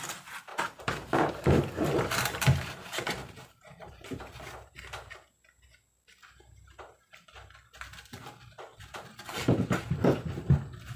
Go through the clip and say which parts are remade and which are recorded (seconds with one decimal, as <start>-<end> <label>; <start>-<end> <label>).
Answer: 0.0-0.5 recorded; 0.5-4.2 remade; 4.2-8.7 recorded; 8.7-9.9 remade; 9.9-11.0 recorded